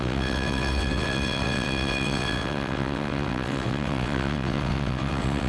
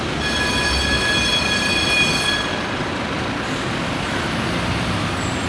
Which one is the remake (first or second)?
first